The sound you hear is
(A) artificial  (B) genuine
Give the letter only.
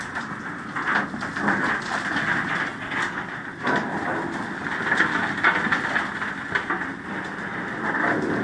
B